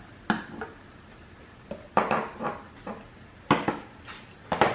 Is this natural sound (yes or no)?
yes